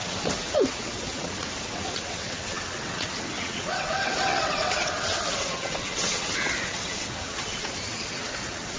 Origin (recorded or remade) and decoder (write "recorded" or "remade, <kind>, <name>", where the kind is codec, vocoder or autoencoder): remade, vocoder, WaveNeXt